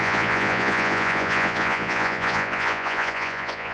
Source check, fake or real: fake